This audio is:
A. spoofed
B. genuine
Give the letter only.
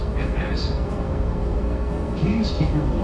A